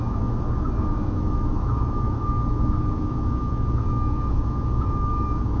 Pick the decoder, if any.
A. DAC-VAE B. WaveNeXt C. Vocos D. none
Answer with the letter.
A